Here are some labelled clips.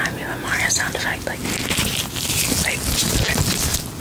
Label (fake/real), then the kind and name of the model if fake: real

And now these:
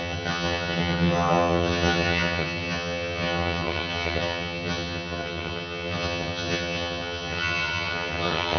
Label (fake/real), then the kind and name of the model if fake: fake, vocoder, HiFi-GAN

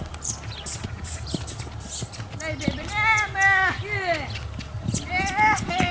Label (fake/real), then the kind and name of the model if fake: real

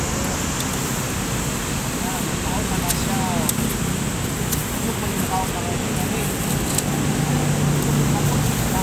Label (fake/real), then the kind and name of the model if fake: real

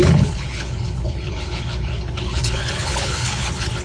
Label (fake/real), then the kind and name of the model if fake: fake, codec, HILCodec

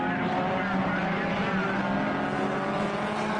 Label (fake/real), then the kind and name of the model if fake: real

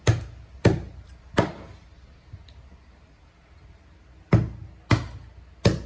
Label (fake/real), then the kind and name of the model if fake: real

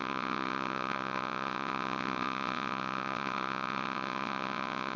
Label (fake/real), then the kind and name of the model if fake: fake, vocoder, WaveNeXt